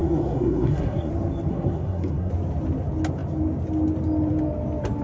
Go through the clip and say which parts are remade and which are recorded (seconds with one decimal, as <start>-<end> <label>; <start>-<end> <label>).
0.0-1.1 remade; 1.1-1.5 recorded; 1.5-2.3 remade; 2.3-5.0 recorded